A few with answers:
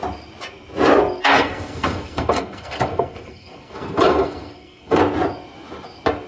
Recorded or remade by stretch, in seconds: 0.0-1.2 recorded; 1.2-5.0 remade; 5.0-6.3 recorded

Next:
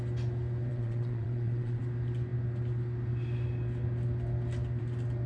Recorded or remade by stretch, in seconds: 0.0-0.7 recorded; 0.7-1.8 remade; 1.8-5.3 recorded